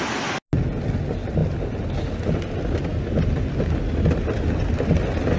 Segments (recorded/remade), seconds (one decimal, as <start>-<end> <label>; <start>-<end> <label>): 0.0-5.4 recorded